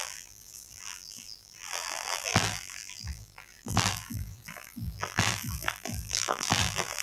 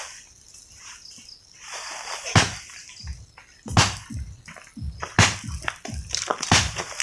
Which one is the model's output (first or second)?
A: first